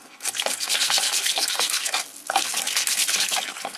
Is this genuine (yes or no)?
no